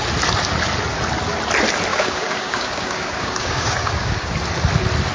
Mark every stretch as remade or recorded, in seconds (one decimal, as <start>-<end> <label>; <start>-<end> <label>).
0.0-1.9 recorded; 1.9-4.3 remade; 4.3-5.1 recorded